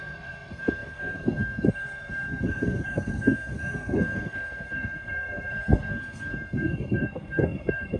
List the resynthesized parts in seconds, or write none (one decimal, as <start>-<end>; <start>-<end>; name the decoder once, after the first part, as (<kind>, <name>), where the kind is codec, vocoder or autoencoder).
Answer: 0.0-8.0 (codec, SNAC)